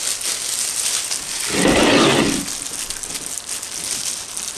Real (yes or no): yes